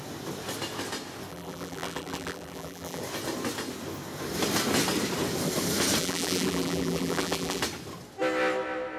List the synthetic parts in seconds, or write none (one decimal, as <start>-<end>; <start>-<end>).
1.3-3.0; 6.0-7.6